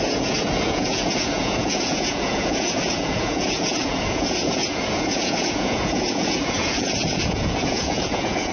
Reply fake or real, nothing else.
fake